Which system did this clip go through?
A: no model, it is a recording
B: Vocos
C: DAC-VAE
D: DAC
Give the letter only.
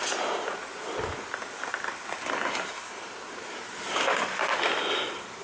A